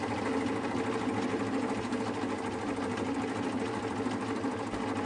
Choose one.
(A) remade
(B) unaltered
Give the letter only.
B